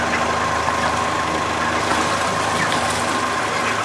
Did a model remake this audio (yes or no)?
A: no